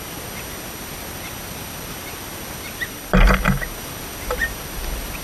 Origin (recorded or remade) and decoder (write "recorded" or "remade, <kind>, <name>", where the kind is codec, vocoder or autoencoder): recorded